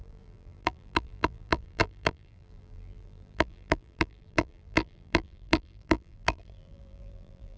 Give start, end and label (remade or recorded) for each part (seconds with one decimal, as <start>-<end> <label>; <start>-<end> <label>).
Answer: 0.0-7.6 remade